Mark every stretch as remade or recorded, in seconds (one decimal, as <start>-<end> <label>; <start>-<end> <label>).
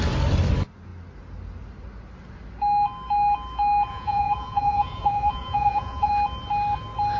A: 0.0-3.9 recorded; 3.9-6.1 remade; 6.1-7.2 recorded